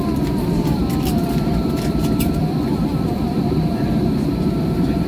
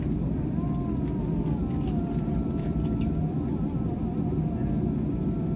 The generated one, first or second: first